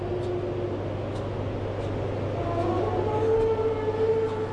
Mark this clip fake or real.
real